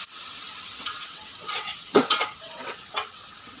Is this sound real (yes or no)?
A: no